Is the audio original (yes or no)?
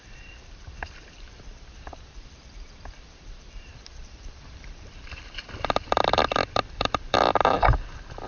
no